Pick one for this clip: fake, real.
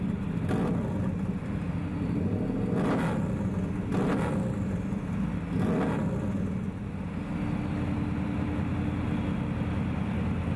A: real